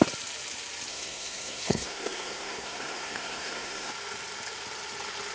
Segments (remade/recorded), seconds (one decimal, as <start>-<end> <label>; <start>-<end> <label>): 0.0-0.9 recorded; 0.9-3.9 remade; 3.9-5.3 recorded